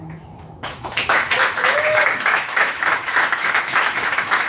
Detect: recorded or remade remade